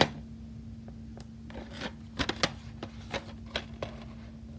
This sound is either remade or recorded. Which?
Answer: recorded